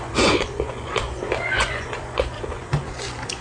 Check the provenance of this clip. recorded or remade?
remade